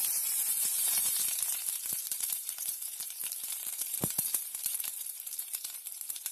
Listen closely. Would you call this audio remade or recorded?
remade